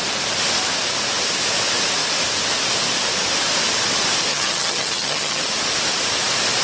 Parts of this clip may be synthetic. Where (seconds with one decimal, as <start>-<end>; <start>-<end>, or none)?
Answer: 4.3-5.4